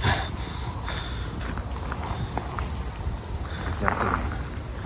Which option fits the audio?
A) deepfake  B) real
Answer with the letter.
B